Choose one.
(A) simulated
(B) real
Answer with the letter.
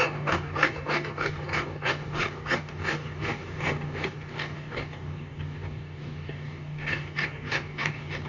A